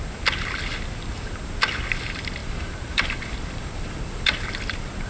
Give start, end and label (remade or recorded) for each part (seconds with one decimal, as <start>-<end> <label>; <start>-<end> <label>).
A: 0.0-2.4 recorded; 2.4-4.5 remade; 4.5-5.1 recorded